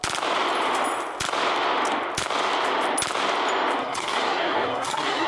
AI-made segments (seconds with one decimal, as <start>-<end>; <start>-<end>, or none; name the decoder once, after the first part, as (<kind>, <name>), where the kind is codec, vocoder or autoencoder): 3.8-5.3 (codec, SNAC)